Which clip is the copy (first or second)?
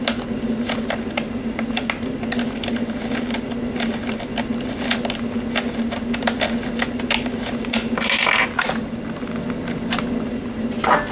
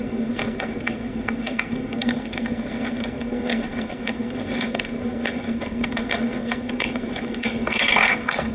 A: second